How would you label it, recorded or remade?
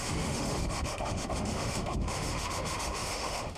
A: remade